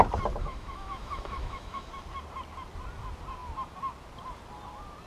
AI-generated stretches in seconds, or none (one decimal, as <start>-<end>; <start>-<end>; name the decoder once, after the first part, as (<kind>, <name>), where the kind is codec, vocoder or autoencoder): 0.4-1.9 (autoencoder, DAC-VAE)